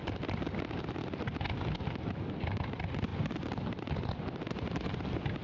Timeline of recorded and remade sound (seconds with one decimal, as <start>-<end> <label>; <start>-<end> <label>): 0.0-5.4 recorded